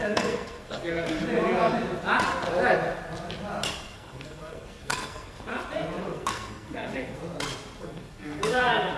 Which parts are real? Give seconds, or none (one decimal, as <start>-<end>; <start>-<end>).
1.2-3.7; 5.5-6.0; 7.2-7.8